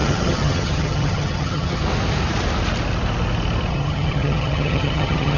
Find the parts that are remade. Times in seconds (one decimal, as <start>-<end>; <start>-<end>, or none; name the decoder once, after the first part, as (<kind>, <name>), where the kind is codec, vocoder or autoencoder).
0.0-1.8 (vocoder, HiFi-GAN); 3.7-5.4